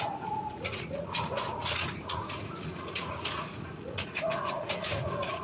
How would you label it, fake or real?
fake